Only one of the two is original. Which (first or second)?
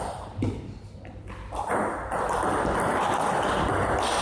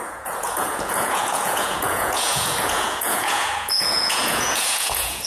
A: first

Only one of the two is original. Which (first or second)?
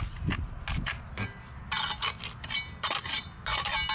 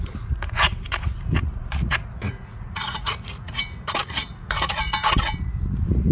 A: first